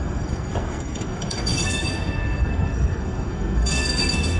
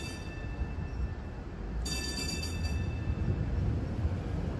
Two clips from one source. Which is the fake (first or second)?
first